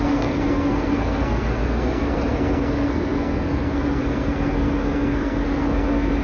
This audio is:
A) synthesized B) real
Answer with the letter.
A